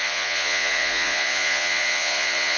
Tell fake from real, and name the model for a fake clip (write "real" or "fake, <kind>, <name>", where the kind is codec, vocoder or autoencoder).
fake, vocoder, Vocos